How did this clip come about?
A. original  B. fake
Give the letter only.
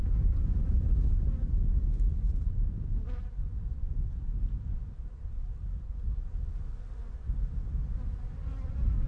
A